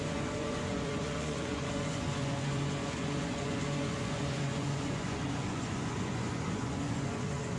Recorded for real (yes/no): no